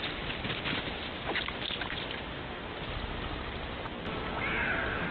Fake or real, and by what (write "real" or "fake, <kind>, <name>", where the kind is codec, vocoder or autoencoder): real